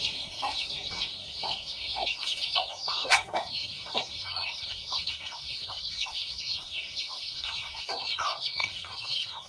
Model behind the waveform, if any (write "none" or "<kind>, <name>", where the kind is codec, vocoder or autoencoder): codec, SNAC